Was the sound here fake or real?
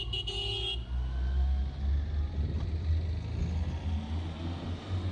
real